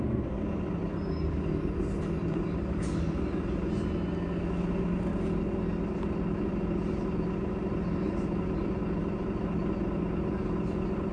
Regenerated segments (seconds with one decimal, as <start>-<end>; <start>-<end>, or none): none